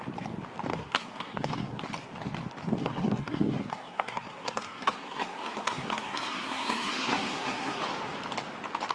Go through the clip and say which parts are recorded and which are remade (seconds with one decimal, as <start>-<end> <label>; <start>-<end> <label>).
0.0-0.7 recorded; 0.7-1.8 remade; 1.8-2.8 recorded; 2.8-7.8 remade; 7.8-8.9 recorded